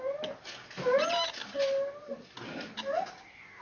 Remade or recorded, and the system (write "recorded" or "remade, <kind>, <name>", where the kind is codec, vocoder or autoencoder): recorded